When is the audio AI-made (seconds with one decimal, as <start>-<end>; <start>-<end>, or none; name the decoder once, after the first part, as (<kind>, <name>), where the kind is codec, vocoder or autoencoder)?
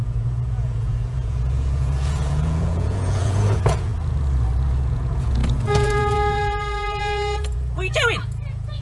0.0-3.9 (vocoder, Vocos); 4.7-8.8